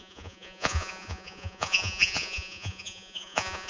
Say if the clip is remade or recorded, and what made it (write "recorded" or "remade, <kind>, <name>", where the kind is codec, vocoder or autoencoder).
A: remade, vocoder, Vocos